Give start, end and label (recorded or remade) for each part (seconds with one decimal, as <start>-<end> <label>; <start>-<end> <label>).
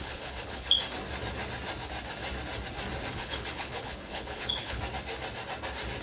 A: 0.0-0.7 remade; 0.7-3.1 recorded; 3.1-4.8 remade; 4.8-6.0 recorded